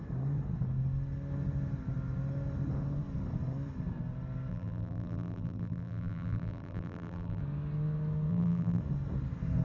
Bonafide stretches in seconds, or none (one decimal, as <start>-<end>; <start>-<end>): 0.0-4.5; 7.4-8.3; 8.8-9.6